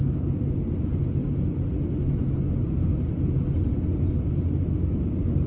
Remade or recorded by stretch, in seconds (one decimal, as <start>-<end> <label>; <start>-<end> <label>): 0.0-5.5 recorded